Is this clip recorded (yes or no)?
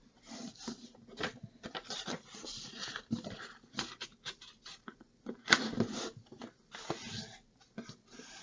yes